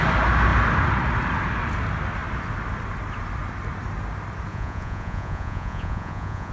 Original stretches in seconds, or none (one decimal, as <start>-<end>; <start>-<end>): 0.0-4.5